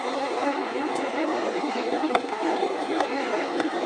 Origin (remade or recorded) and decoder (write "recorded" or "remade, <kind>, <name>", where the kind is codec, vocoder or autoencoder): remade, codec, SNAC